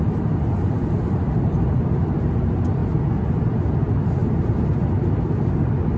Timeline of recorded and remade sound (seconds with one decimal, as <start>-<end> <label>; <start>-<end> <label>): 0.0-2.8 remade; 2.8-3.7 recorded; 3.7-4.2 remade; 4.2-6.0 recorded

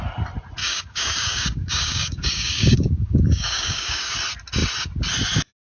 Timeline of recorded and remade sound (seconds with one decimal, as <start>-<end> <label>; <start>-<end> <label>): 0.0-0.6 recorded; 0.6-4.1 remade; 4.1-5.8 recorded

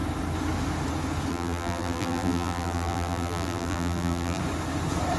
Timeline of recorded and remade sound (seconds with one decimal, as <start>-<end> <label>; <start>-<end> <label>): 0.0-1.3 recorded; 1.3-4.4 remade; 4.4-5.2 recorded

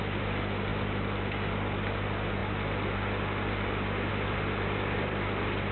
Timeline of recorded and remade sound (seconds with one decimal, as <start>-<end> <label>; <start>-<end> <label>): 0.0-5.7 recorded

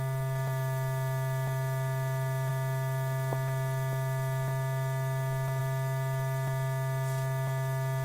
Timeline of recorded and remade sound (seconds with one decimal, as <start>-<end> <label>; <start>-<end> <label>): 0.0-8.0 recorded

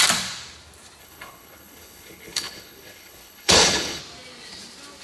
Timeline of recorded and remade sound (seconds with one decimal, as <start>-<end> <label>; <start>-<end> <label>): 0.0-1.0 recorded; 1.0-4.0 remade; 4.0-5.0 recorded

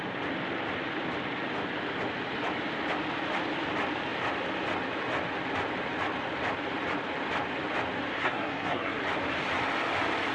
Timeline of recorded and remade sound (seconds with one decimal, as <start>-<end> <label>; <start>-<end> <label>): 0.0-8.1 recorded; 8.1-9.0 remade; 9.0-10.3 recorded